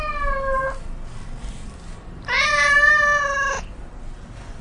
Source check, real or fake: real